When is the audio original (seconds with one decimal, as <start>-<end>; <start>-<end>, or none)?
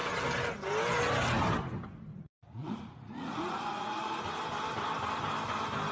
0.0-2.1; 4.3-5.9